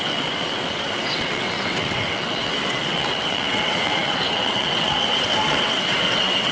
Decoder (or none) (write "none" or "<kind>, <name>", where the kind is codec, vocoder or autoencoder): vocoder, WaveNeXt